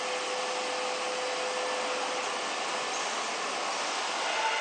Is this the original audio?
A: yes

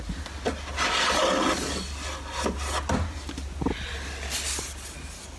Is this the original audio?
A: yes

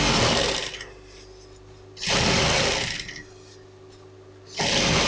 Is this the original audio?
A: yes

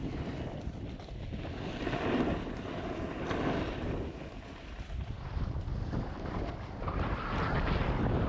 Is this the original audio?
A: yes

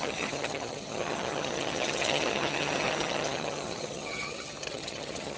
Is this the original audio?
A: no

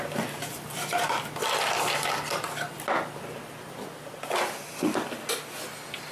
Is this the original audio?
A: yes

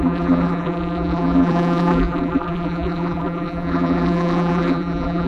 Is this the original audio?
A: no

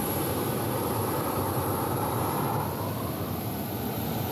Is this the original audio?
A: no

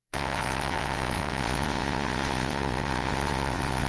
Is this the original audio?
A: no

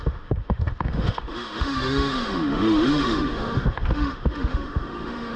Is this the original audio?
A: no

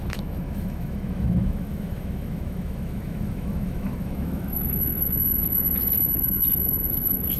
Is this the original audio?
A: no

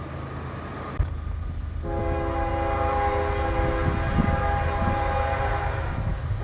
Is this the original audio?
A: yes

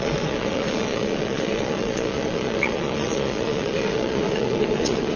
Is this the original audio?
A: no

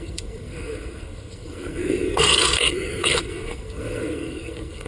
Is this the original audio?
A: no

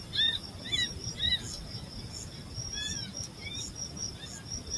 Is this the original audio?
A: yes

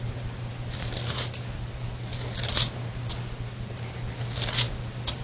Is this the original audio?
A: yes